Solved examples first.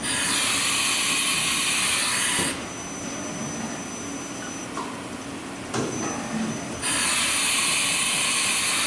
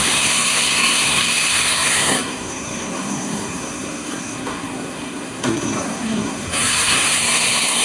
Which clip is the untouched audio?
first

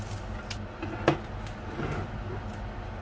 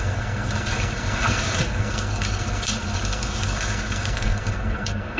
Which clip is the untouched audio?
first